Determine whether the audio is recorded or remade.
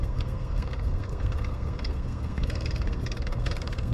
remade